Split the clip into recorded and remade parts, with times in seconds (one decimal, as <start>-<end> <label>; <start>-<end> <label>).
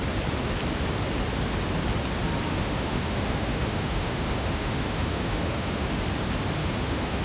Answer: 0.0-2.5 recorded; 2.5-6.0 remade; 6.0-6.6 recorded; 6.6-7.2 remade